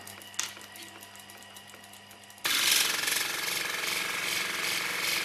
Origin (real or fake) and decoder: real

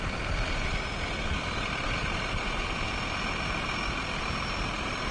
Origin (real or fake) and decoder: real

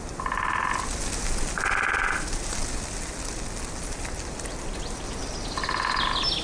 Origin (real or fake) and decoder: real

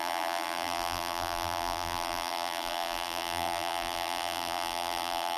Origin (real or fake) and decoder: fake, vocoder, BigVGAN v2